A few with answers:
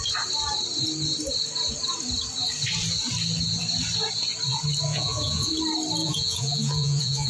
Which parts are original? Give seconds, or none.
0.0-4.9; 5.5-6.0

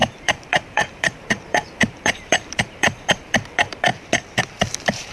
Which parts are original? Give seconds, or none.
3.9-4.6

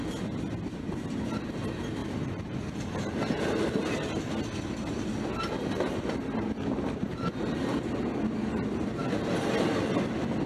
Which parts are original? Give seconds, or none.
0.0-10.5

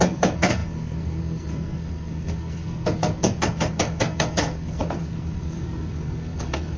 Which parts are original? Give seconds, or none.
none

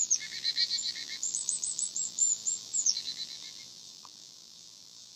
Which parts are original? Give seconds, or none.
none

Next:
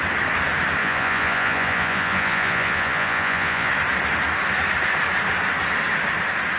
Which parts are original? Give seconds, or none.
0.0-0.8; 3.7-6.6

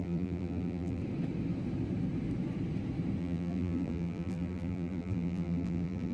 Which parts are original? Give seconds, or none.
1.0-3.2